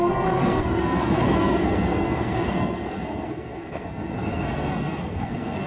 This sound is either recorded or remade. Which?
remade